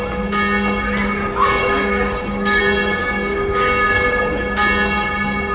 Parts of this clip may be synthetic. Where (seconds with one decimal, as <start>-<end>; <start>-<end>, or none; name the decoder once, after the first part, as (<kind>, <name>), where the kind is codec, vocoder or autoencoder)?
1.6-2.6 (codec, DAC); 3.0-4.2